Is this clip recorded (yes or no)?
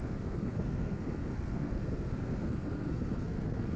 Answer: no